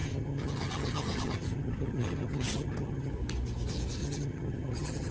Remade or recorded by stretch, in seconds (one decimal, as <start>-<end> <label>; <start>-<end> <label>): 0.0-3.1 remade; 3.1-4.0 recorded; 4.0-5.1 remade